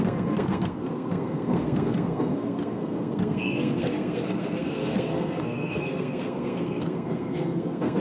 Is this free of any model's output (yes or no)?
no